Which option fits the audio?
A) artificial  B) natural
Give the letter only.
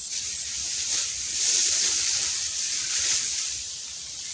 A